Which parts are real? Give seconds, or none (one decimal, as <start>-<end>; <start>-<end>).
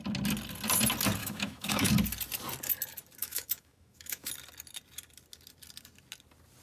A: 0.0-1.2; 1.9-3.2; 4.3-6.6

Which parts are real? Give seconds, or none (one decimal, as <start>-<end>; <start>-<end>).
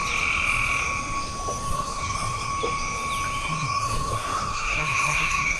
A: 0.0-1.7; 2.5-3.4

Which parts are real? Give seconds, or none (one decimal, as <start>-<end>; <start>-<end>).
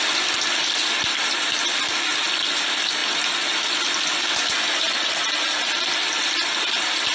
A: 0.0-7.1